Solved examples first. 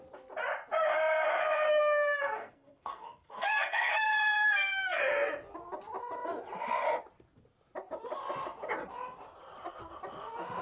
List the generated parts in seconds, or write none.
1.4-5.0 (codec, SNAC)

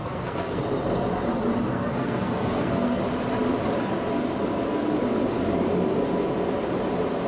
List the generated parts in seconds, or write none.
0.0-0.6 (codec, SNAC); 1.7-3.0

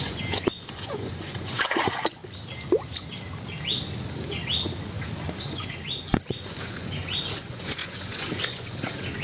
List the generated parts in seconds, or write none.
0.0-2.2 (vocoder, Vocos); 5.4-9.2

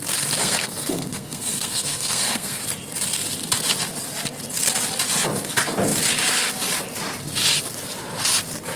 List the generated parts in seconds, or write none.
0.4-2.6 (codec, SNAC)

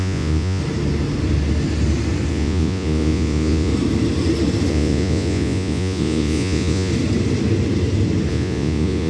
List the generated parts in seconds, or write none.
0.0-0.6 (vocoder, Vocos); 2.3-3.7; 4.7-6.9; 8.3-9.1

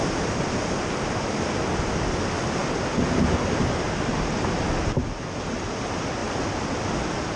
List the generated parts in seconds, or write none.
none